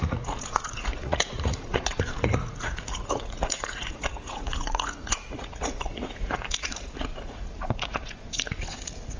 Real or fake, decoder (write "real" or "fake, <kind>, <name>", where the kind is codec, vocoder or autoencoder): fake, vocoder, Vocos